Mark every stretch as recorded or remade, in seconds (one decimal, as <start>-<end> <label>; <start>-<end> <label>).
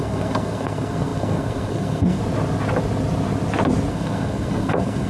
0.0-2.2 remade; 2.2-3.9 recorded; 3.9-5.1 remade